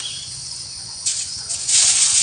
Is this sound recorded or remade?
remade